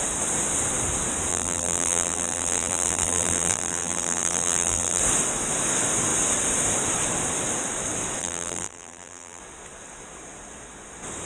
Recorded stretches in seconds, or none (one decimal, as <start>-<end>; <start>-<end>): 0.0-1.3; 5.0-8.2; 9.4-11.3